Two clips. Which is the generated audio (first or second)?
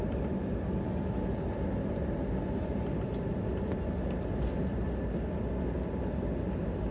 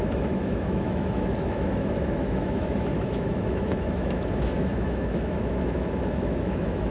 second